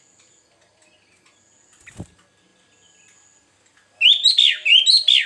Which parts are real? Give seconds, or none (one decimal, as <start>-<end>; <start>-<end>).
0.0-5.3